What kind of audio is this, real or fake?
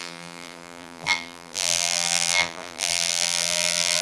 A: fake